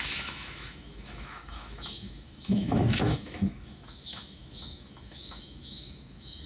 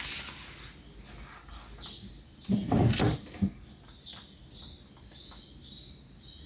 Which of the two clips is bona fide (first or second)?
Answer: second